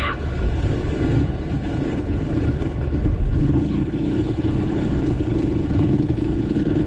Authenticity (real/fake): fake